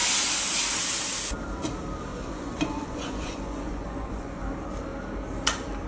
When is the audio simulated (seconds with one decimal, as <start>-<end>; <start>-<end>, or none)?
2.1-4.4